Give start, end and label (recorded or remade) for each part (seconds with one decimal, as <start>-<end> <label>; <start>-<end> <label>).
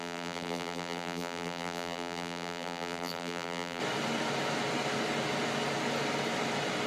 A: 0.0-3.8 remade; 3.8-6.9 recorded